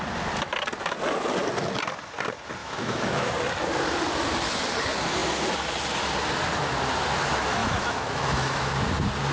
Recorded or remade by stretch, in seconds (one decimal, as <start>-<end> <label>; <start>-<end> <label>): 0.0-2.6 recorded; 2.6-3.3 remade; 3.3-7.6 recorded; 7.6-8.7 remade; 8.7-9.3 recorded